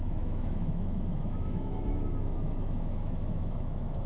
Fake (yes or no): yes